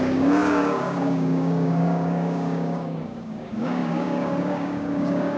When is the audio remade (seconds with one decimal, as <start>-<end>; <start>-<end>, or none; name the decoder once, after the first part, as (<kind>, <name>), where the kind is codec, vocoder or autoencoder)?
0.0-5.4 (codec, DAC)